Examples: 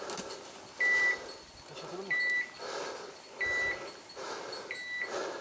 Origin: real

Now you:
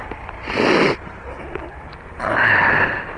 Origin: real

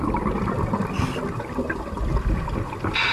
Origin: real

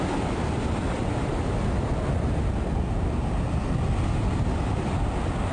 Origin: real